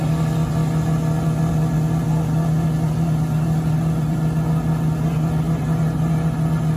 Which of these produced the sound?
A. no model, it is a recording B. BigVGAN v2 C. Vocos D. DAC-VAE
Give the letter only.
A